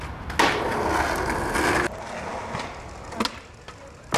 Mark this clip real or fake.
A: real